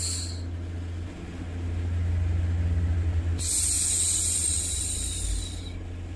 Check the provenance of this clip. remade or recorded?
recorded